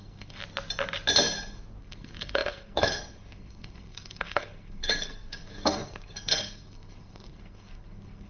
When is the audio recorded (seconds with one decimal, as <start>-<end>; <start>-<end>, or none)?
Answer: 0.4-1.8

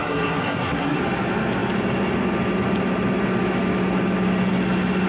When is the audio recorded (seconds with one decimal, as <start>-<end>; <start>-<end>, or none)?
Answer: 1.0-5.1